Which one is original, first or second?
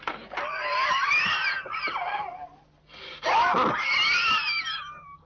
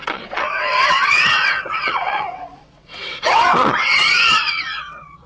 first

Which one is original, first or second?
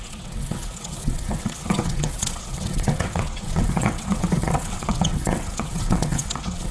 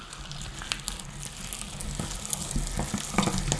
second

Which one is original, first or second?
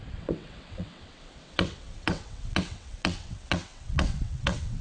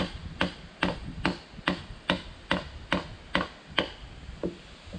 second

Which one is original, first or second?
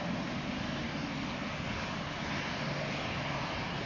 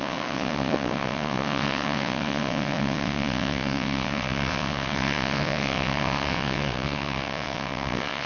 first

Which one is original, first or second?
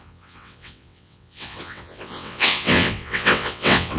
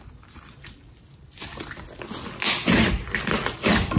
second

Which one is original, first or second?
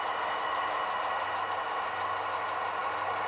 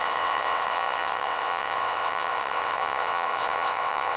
first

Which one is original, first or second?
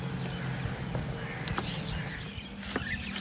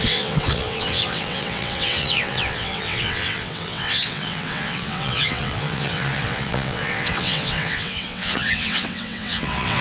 first